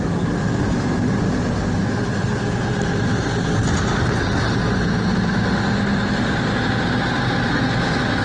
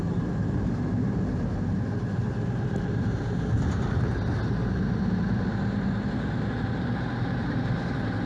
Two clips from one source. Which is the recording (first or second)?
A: first